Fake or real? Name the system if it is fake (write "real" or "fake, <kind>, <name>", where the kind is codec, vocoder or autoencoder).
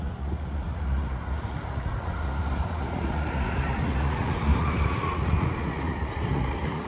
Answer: fake, vocoder, Vocos